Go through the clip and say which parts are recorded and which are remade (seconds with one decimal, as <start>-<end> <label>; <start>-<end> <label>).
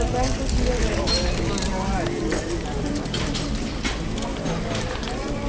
0.0-5.5 recorded